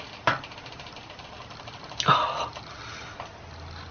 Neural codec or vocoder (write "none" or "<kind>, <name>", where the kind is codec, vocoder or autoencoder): none